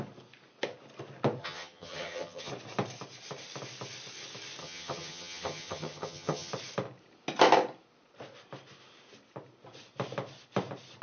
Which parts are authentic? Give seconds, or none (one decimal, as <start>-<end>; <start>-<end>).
0.0-1.4; 2.5-4.6; 6.5-11.0